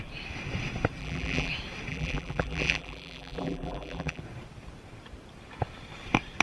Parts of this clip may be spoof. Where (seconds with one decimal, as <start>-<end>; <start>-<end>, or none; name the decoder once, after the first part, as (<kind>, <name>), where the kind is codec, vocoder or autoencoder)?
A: 1.0-1.5 (vocoder, BigVGAN v2); 1.9-4.2